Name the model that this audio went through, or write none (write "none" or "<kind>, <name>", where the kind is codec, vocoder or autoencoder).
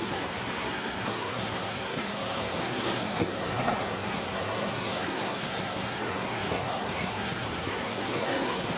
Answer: codec, SNAC